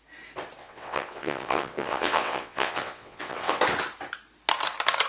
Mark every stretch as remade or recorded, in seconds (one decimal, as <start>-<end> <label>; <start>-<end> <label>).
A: 0.0-0.6 recorded; 0.6-3.6 remade; 3.6-5.1 recorded